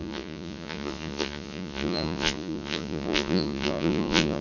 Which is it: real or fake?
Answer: fake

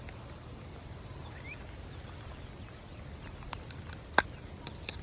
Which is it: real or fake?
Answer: real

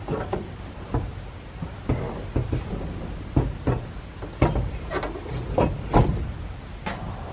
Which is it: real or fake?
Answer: real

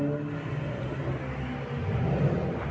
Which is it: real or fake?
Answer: real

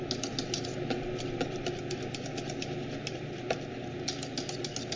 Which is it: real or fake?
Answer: real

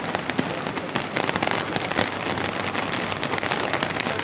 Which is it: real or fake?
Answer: real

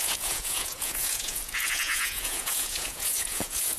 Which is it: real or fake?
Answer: fake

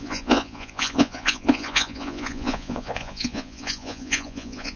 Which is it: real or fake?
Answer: fake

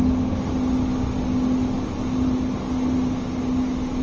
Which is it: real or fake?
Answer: real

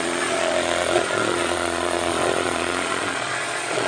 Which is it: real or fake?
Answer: fake